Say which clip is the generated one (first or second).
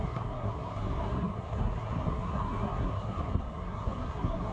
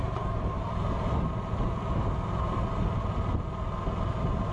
first